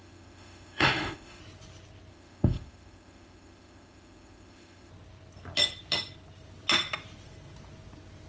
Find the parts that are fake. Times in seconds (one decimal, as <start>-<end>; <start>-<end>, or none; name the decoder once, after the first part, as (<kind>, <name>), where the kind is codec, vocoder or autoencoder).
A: 0.0-1.4 (autoencoder, DAC-VAE); 2.1-4.9

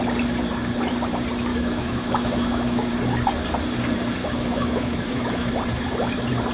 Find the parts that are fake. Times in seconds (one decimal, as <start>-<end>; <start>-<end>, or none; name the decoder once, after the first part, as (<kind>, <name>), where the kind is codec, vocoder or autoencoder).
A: 1.5-2.9 (autoencoder, DAC-VAE); 4.2-5.5

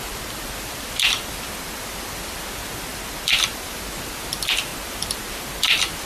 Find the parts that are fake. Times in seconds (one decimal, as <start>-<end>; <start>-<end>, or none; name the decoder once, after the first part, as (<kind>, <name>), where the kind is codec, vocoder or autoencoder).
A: none

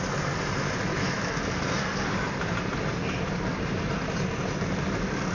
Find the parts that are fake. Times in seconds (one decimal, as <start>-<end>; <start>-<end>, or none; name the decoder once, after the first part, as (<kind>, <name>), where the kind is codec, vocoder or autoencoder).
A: 0.9-1.4 (autoencoder, DAC-VAE)

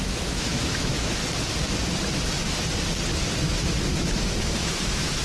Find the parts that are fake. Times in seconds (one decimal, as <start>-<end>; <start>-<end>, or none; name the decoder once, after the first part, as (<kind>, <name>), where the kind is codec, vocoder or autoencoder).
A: 0.0-1.2 (autoencoder, DAC-VAE); 3.4-5.2